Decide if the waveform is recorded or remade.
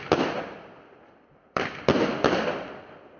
remade